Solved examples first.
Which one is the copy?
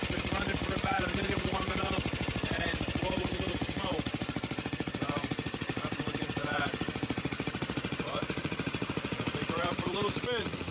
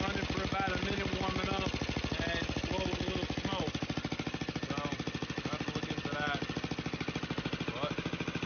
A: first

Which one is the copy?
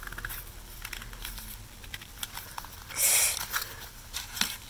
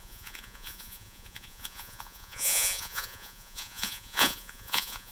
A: second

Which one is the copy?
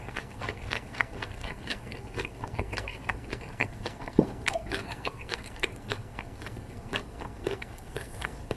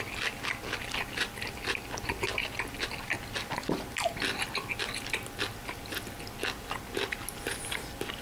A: first